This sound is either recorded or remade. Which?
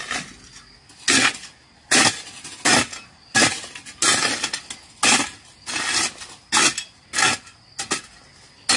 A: recorded